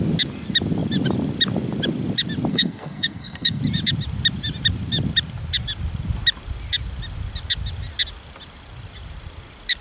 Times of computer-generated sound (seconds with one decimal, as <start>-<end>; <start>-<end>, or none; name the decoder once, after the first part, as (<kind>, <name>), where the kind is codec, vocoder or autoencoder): 2.5-3.6 (codec, SNAC)